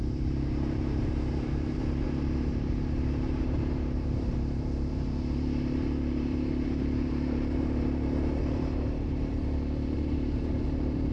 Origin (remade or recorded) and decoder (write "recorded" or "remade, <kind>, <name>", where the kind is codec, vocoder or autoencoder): remade, vocoder, BigVGAN v2